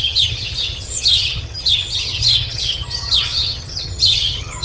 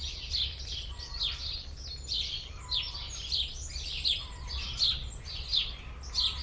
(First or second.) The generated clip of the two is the first